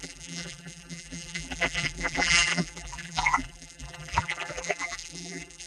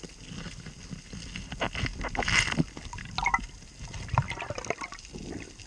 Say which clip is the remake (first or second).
first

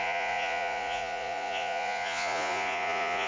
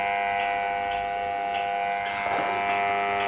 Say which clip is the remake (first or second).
first